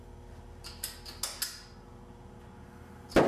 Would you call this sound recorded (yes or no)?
yes